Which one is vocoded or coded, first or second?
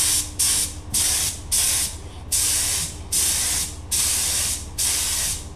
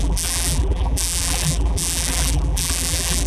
second